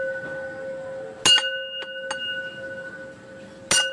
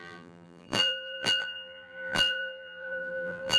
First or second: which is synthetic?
second